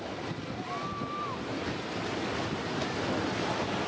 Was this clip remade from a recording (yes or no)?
no